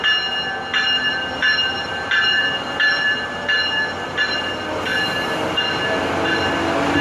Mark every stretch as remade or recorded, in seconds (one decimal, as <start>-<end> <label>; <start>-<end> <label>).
0.0-0.7 recorded; 0.7-4.5 remade; 4.5-7.0 recorded